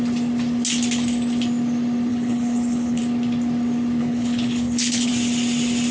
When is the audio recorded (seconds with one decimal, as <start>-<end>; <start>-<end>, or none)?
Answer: 0.0-2.1; 3.0-4.0; 5.1-5.9